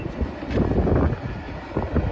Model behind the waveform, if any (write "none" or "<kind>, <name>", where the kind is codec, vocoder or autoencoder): none